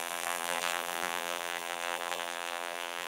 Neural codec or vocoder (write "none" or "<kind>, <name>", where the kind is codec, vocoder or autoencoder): vocoder, BigVGAN v2